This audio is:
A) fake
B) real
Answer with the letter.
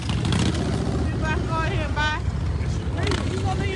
B